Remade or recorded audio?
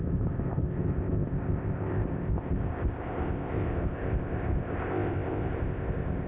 remade